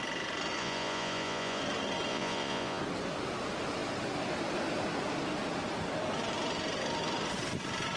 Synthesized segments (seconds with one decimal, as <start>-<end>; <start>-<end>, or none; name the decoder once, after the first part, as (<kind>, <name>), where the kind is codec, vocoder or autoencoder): 0.6-1.6 (vocoder, Vocos); 2.1-2.8